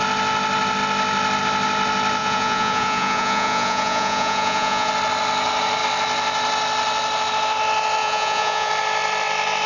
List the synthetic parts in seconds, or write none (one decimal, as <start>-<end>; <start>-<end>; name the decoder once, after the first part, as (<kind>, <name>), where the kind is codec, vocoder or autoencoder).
2.2-4.9 (vocoder, Vocos); 8.0-8.7